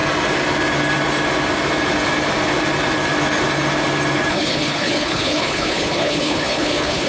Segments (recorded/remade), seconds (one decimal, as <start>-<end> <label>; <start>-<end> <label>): 0.0-4.3 recorded; 4.3-7.1 remade